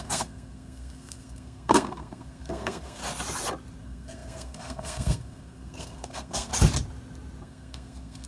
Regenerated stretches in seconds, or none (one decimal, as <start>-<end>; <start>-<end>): 0.0-3.0; 3.8-6.5; 7.4-8.3